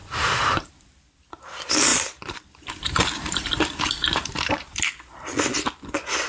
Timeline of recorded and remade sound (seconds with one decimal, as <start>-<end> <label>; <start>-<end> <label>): 0.0-0.7 remade; 0.7-1.9 recorded; 1.9-4.9 remade; 4.9-6.3 recorded